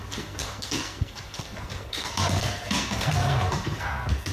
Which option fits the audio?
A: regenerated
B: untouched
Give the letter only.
A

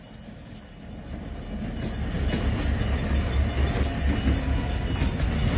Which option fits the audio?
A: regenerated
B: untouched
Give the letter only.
B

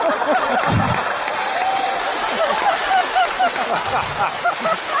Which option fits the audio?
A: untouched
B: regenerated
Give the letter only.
A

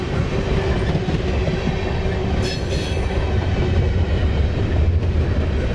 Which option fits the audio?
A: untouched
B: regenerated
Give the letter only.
A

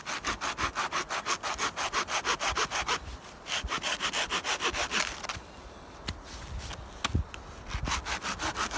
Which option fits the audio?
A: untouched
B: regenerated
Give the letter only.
A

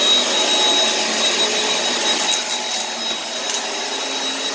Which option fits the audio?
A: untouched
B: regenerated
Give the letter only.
A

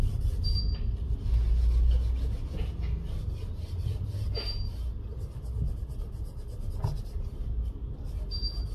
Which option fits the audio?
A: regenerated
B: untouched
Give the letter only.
B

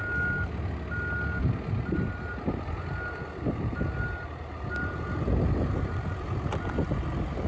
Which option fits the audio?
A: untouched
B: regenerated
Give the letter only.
A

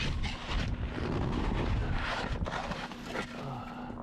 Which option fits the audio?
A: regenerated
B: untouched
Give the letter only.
B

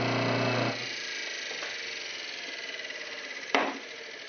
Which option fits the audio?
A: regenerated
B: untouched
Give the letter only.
B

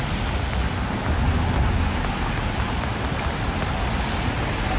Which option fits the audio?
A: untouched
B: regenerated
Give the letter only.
A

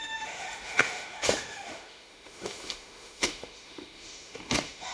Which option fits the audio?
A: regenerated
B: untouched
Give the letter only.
A